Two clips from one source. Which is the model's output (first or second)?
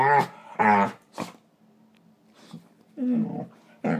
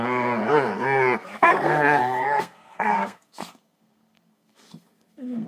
second